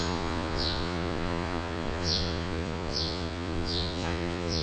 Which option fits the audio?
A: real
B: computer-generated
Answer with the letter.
B